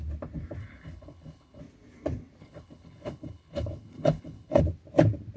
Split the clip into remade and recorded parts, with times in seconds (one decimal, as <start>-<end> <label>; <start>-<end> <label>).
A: 0.0-0.6 recorded; 0.6-1.6 remade; 1.6-2.4 recorded; 2.4-4.6 remade; 4.6-5.4 recorded